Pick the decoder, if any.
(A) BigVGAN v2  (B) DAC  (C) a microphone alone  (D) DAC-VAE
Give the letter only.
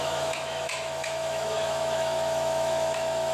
D